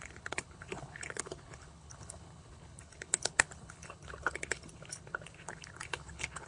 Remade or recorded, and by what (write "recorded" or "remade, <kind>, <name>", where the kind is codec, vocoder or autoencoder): remade, codec, HILCodec